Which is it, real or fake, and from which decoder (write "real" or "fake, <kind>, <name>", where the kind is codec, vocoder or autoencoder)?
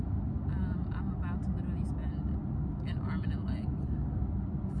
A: real